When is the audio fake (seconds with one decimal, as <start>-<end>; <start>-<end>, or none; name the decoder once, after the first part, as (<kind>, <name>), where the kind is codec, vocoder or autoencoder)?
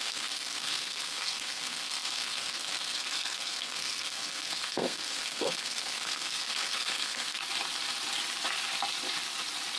0.0-7.4 (codec, SNAC)